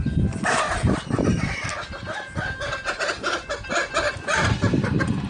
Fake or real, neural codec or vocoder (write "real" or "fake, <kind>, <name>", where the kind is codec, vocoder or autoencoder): real